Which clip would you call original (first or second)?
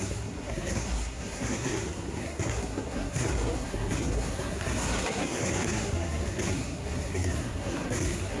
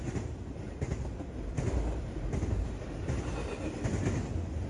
second